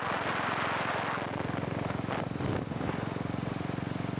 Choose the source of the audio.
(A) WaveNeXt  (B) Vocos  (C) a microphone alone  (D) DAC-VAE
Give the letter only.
C